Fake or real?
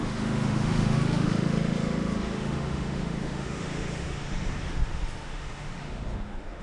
fake